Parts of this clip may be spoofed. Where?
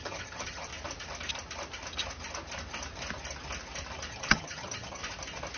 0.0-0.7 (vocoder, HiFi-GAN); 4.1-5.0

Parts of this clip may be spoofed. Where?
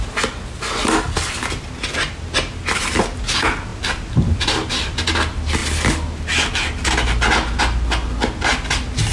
none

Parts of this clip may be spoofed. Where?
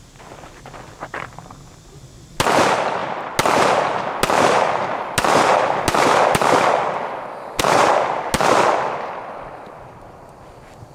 none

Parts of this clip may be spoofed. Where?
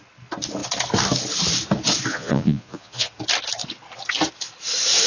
2.1-3.1 (vocoder, Vocos)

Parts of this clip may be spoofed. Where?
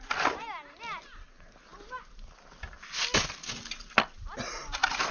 none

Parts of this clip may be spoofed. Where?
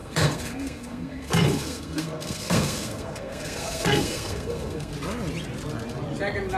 0.0-4.9 (codec, SNAC)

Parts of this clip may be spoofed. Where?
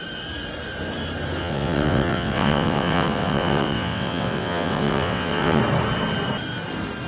1.4-5.6 (vocoder, WaveNeXt)